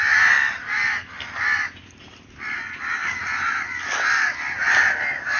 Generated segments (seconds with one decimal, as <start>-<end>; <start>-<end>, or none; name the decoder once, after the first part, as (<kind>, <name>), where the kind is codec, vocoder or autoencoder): none

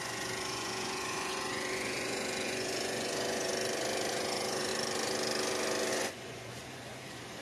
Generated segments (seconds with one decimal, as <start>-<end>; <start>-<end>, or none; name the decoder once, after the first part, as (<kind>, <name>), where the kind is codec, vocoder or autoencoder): 0.0-3.5 (vocoder, Vocos); 4.1-4.7; 5.9-7.4

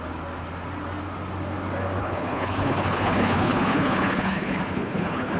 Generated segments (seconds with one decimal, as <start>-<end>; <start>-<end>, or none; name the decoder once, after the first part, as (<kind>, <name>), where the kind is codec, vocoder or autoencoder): 2.0-5.4 (codec, HILCodec)

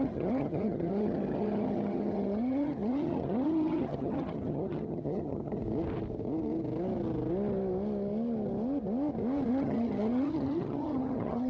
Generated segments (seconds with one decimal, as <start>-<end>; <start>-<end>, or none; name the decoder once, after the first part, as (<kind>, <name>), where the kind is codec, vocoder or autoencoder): 0.0-5.6 (vocoder, HiFi-GAN); 9.5-11.5

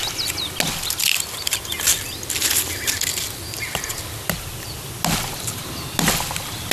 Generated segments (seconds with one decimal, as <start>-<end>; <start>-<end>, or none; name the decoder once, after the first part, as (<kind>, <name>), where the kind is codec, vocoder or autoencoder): none